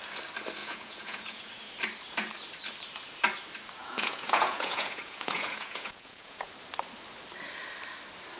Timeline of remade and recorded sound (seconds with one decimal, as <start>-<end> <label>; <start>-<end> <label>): 0.0-0.6 recorded; 0.6-1.5 remade; 1.5-3.8 recorded; 3.8-6.5 remade; 6.5-8.4 recorded